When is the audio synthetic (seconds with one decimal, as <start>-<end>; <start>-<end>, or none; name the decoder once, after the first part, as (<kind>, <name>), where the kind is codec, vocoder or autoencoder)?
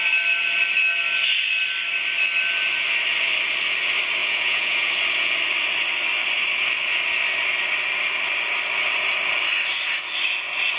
4.2-4.9 (vocoder, Vocos)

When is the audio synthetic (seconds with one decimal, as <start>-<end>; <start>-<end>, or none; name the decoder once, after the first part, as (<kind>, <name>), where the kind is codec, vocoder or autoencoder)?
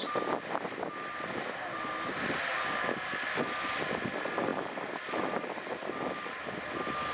none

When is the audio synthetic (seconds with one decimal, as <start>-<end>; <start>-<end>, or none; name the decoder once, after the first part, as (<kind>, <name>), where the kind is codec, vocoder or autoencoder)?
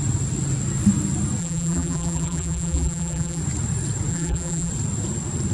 1.4-3.4 (vocoder, BigVGAN v2); 4.1-4.7